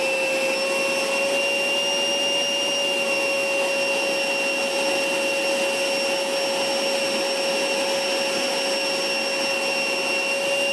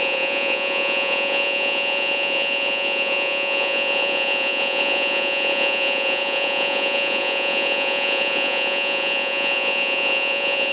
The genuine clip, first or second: first